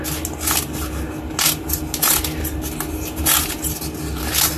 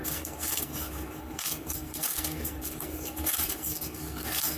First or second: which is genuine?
first